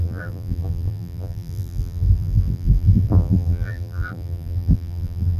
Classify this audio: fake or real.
fake